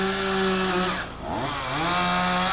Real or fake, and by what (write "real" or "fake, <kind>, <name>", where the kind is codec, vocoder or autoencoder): real